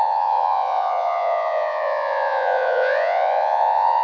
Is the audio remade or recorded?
remade